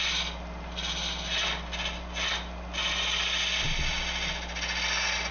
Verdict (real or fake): real